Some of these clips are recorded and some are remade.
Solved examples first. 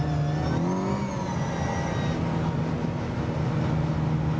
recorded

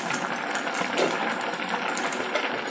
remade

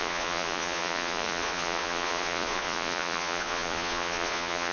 remade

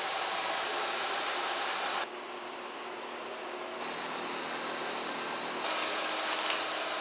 recorded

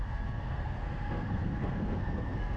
remade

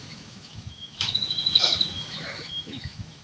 remade